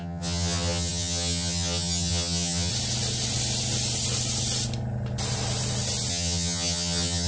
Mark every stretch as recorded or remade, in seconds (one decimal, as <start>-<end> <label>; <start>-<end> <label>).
0.0-2.7 remade; 2.7-6.1 recorded; 6.1-7.3 remade